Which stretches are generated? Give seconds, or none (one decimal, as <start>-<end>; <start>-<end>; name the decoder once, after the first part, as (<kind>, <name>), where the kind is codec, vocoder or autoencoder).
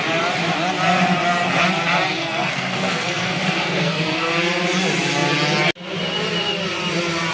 2.1-4.3 (codec, SNAC)